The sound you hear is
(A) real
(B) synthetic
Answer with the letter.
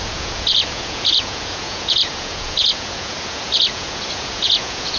B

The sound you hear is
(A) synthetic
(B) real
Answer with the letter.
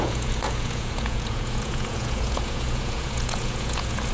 A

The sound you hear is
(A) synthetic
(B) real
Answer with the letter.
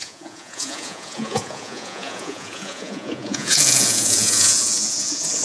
A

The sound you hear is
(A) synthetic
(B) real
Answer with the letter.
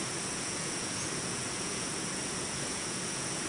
A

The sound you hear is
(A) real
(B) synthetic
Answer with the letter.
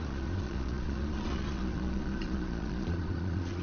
B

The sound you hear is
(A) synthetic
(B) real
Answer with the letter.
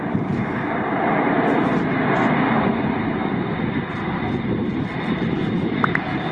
B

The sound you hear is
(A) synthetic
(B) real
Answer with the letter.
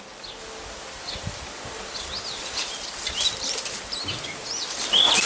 B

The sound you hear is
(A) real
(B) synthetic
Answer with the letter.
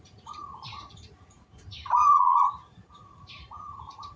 B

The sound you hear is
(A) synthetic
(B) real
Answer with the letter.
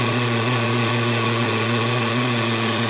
A